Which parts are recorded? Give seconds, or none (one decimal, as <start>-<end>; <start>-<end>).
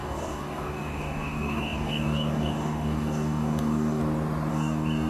4.0-4.5